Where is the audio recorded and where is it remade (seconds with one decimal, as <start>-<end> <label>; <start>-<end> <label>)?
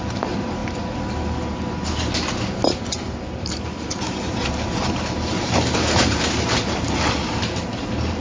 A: 0.0-0.6 remade; 0.6-3.2 recorded; 3.2-8.2 remade